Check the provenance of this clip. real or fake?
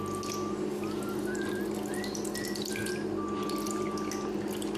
real